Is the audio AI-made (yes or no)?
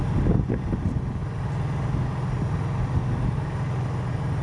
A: no